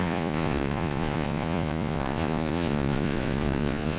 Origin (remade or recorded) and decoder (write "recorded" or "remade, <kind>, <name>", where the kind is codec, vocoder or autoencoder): remade, vocoder, Vocos